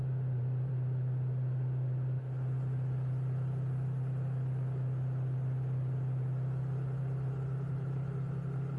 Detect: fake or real real